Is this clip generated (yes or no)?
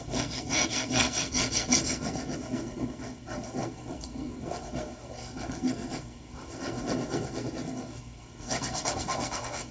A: yes